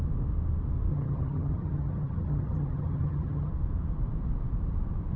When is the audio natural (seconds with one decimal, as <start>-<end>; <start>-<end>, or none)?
0.0-0.9; 3.5-5.2